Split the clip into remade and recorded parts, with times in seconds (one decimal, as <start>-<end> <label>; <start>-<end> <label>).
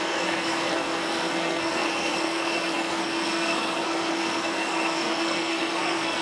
0.0-6.2 remade